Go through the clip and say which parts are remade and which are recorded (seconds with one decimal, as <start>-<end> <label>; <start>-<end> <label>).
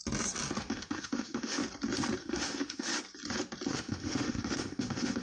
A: 0.0-0.6 recorded; 0.6-1.6 remade; 1.6-2.2 recorded; 2.2-2.9 remade; 2.9-3.7 recorded; 3.7-5.2 remade